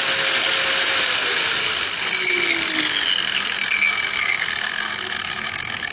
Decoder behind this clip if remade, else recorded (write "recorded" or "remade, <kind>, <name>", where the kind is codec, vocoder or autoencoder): recorded